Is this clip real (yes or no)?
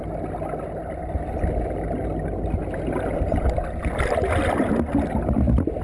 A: yes